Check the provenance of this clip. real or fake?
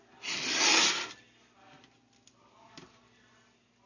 real